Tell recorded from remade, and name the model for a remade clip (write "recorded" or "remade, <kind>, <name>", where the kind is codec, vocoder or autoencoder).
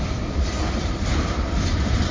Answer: remade, vocoder, BigVGAN v2